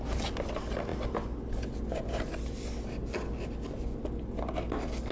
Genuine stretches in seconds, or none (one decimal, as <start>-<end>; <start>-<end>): 0.0-5.1